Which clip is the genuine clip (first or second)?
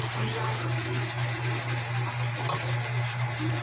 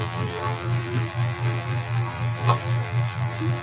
first